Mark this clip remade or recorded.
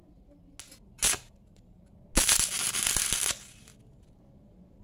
recorded